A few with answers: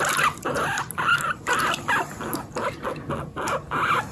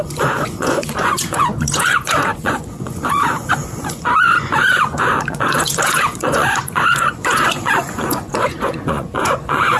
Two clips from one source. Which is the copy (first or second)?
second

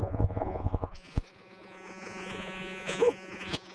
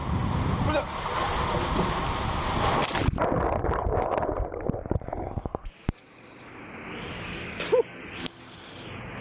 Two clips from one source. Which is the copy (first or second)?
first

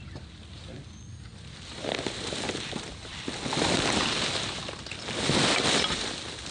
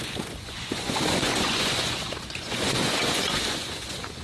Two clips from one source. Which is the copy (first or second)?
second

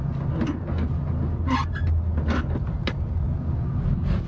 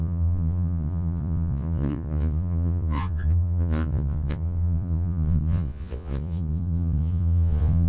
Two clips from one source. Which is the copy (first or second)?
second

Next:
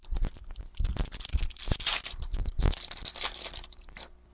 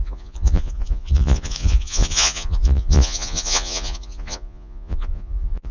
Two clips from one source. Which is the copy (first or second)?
second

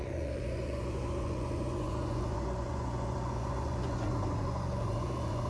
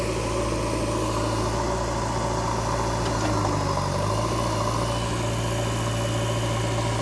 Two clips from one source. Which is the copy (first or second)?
first